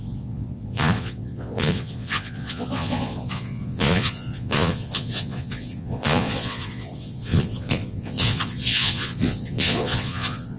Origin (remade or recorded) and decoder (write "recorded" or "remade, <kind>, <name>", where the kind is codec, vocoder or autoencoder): remade, vocoder, Vocos